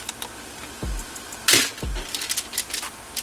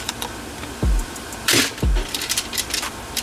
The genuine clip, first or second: first